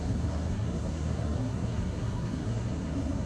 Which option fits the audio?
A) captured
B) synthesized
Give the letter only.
B